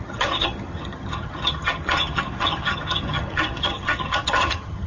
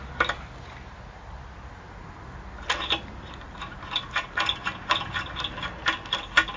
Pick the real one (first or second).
second